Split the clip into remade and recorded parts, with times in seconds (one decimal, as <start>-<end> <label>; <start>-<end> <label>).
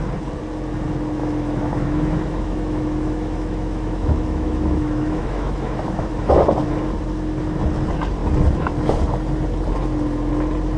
0.0-1.2 recorded; 1.2-6.3 remade; 6.3-10.8 recorded